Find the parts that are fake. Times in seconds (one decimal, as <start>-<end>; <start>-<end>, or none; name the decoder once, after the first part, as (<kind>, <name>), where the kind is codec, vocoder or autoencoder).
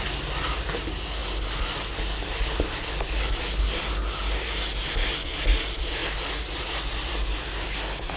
none